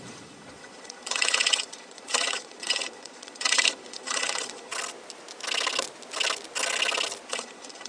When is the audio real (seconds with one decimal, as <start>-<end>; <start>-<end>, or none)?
4.7-7.3